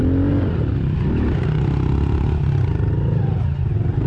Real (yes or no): yes